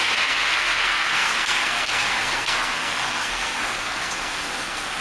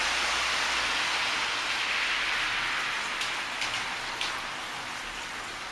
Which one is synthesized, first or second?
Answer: first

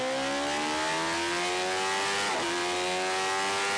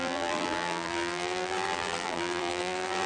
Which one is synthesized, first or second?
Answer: second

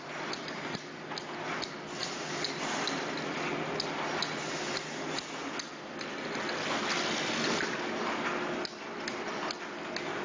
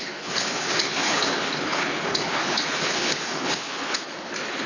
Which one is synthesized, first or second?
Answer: second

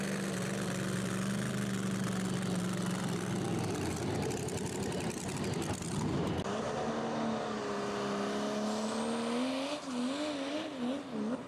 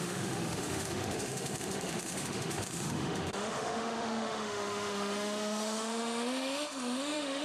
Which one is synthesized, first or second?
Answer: second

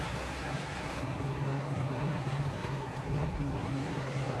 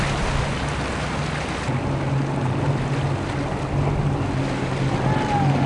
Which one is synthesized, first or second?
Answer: first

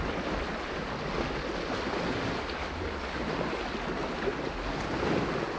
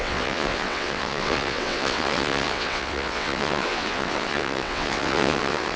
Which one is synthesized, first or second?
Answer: second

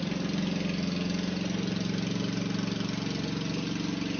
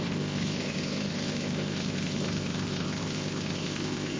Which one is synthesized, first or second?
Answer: second